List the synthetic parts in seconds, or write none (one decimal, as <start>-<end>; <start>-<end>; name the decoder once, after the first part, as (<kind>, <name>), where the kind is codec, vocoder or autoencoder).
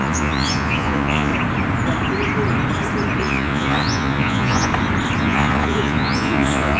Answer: 0.0-1.3 (vocoder, Vocos); 3.2-4.7; 5.2-6.8